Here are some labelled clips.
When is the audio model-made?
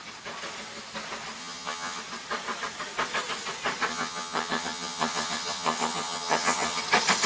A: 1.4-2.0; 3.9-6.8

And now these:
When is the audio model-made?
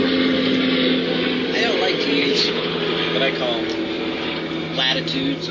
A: 2.2-2.8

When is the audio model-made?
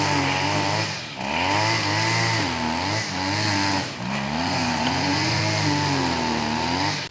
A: 4.4-5.4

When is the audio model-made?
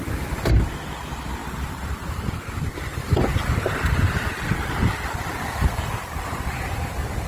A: 1.4-2.3; 3.3-7.3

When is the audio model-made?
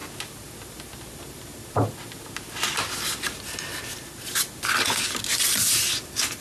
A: none